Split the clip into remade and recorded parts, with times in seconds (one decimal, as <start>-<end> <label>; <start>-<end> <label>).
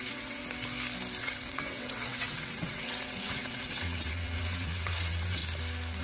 0.0-0.4 remade; 0.4-1.2 recorded; 1.2-5.4 remade; 5.4-6.0 recorded